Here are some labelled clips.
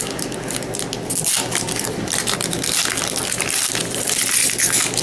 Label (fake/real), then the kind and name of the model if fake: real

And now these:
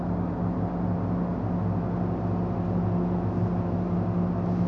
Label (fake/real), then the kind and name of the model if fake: real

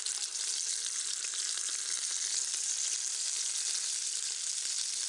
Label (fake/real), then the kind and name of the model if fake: real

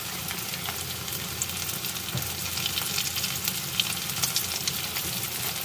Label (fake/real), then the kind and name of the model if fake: real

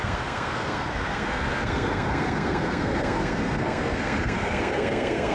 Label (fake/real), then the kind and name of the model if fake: fake, codec, SNAC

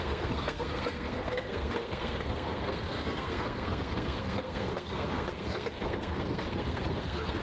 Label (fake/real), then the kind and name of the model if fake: fake, codec, SNAC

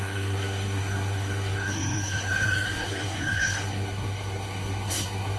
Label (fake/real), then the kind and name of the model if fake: fake, codec, SNAC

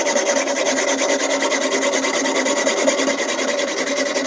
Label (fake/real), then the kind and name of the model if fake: real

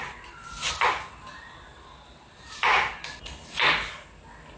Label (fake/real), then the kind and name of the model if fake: real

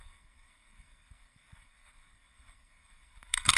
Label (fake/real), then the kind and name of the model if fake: fake, codec, SNAC